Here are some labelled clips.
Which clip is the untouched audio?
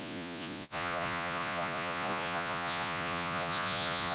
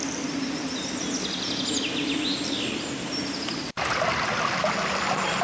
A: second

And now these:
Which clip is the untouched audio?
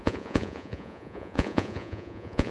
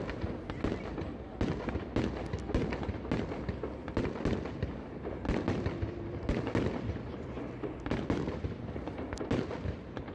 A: second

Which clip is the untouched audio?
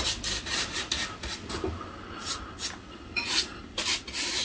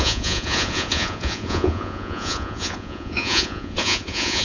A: first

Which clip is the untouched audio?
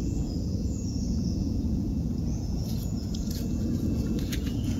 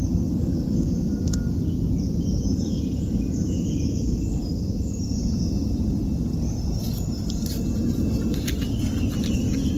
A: second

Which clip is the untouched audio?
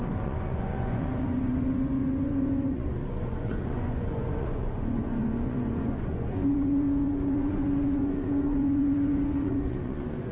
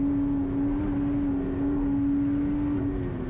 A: second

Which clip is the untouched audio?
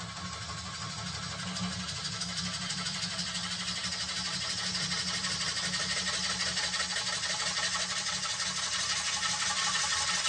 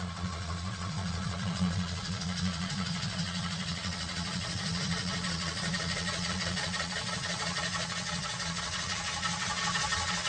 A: first